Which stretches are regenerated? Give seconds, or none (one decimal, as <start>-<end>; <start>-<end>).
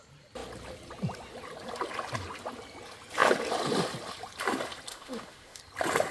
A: 4.9-5.6